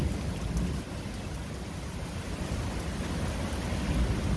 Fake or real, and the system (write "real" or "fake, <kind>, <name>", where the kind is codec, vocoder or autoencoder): real